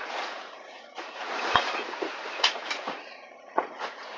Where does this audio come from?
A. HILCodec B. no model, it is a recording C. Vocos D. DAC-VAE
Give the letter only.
C